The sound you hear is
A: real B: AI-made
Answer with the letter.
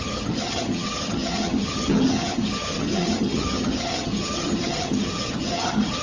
B